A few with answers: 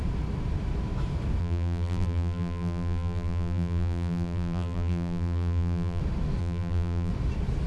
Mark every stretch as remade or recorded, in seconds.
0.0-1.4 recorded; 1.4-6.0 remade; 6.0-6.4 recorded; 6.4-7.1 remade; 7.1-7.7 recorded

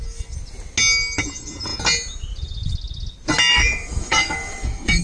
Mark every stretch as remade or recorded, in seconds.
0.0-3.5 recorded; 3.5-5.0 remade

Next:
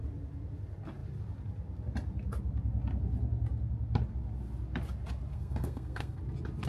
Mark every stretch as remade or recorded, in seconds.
0.0-5.3 recorded; 5.3-6.2 remade; 6.2-6.7 recorded

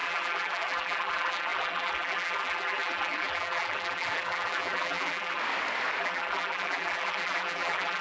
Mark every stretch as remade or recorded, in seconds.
0.0-5.4 remade; 5.4-6.0 recorded; 6.0-8.0 remade

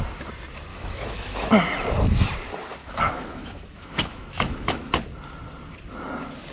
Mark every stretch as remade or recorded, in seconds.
0.0-0.7 recorded; 0.7-1.5 remade; 1.5-2.8 recorded; 2.8-4.9 remade; 4.9-6.5 recorded

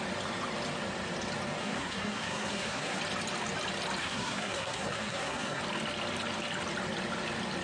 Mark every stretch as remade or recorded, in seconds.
0.0-1.6 recorded; 1.6-3.0 remade; 3.0-4.0 recorded; 4.0-5.6 remade; 5.6-7.6 recorded

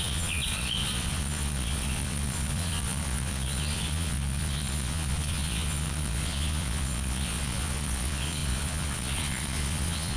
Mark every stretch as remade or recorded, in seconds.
0.0-10.2 remade

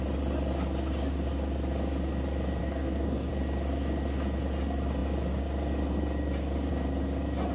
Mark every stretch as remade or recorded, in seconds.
0.0-2.6 recorded; 2.6-3.3 remade; 3.3-7.5 recorded